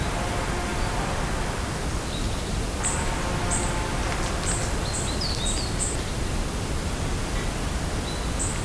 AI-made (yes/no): no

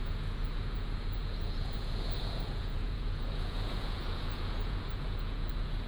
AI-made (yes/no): yes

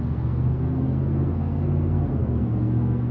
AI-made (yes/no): yes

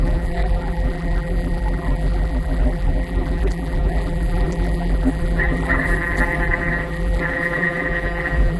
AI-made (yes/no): yes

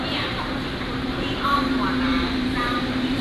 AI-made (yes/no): yes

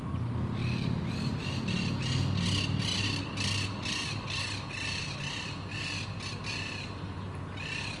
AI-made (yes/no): no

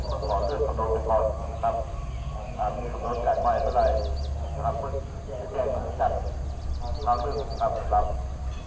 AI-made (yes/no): no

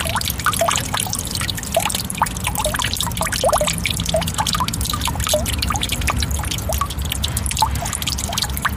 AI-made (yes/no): no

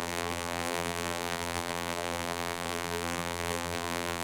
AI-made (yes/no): yes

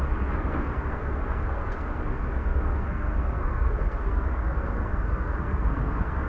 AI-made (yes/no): yes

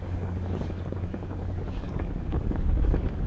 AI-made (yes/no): yes